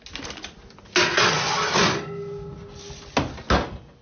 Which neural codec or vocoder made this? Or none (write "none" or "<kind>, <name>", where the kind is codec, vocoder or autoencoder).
none